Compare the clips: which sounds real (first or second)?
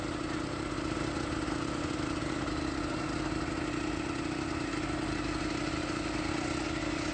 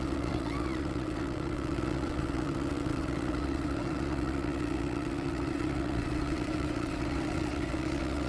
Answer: first